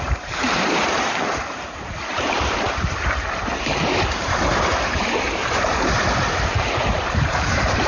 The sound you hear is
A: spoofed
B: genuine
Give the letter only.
A